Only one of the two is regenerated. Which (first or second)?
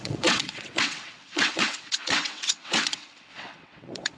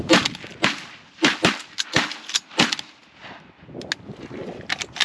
first